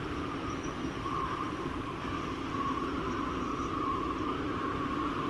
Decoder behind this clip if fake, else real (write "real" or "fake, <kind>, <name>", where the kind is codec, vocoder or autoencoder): real